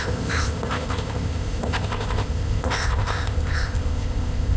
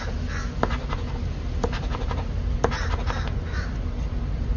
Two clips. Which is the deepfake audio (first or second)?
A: first